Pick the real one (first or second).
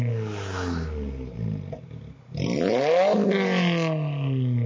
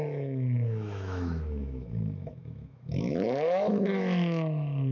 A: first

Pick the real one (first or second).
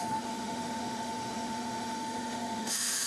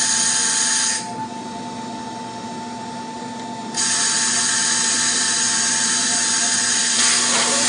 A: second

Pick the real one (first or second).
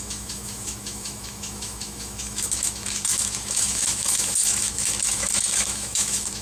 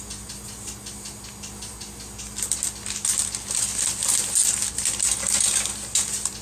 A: second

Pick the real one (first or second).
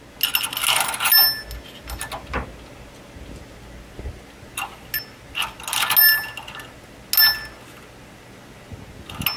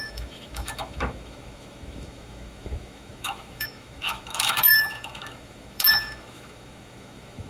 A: first